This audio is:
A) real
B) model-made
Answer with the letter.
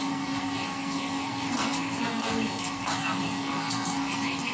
B